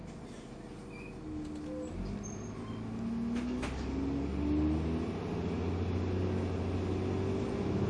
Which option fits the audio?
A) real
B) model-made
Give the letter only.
A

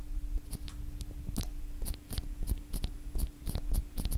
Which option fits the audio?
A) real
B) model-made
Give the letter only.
A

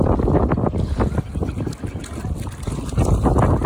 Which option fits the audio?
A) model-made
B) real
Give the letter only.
B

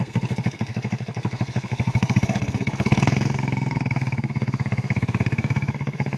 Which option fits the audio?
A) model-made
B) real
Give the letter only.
A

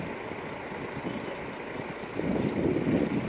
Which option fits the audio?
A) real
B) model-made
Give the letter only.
A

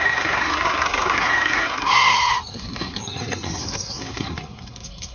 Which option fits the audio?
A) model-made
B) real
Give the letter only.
A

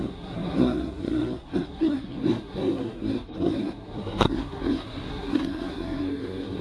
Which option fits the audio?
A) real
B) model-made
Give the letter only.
B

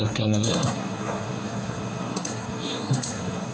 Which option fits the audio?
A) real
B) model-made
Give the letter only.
B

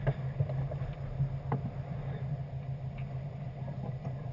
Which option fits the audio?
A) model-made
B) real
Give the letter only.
B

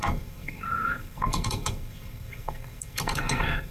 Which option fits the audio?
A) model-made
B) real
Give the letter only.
A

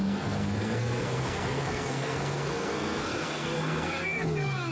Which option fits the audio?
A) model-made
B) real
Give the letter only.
A